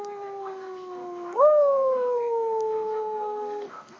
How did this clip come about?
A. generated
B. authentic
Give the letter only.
A